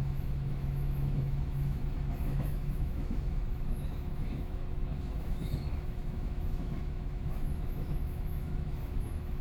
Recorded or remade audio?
remade